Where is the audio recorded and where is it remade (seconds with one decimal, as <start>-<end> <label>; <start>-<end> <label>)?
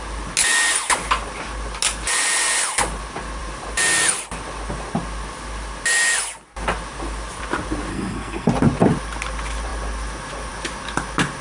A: 0.0-7.9 recorded; 7.9-8.5 remade; 8.5-11.4 recorded